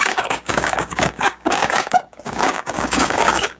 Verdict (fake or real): fake